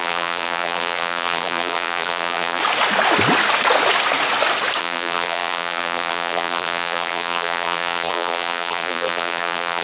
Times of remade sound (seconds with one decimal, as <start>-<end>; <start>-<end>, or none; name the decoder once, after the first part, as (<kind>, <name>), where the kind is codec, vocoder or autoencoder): 0.0-2.6 (vocoder, BigVGAN v2); 4.8-9.8